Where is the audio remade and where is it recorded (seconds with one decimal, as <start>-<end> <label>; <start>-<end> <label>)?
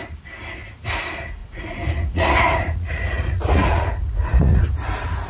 0.0-1.4 recorded; 1.4-4.6 remade; 4.6-5.3 recorded